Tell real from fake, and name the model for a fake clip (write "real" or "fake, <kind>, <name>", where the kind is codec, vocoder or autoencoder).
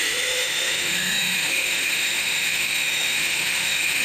fake, autoencoder, DAC-VAE